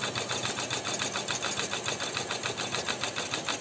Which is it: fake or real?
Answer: real